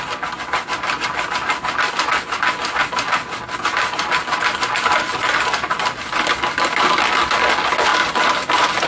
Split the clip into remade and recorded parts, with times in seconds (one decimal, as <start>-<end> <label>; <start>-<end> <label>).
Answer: 0.0-7.9 recorded; 7.9-8.9 remade